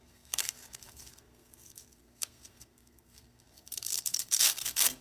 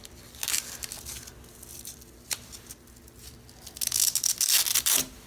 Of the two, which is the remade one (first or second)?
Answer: first